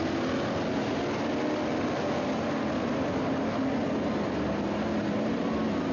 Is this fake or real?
real